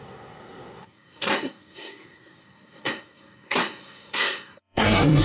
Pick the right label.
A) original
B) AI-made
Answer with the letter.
B